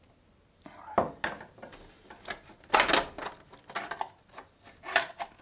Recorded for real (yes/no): yes